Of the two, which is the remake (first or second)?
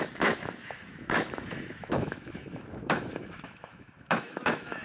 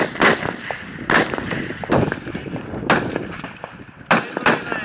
first